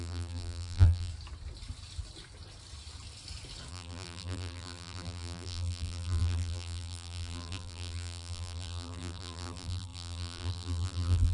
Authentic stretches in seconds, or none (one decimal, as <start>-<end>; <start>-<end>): 1.1-3.7